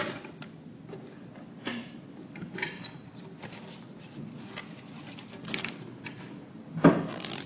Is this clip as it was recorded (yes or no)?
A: yes